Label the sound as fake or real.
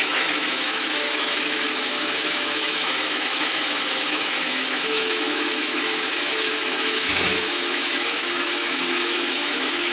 fake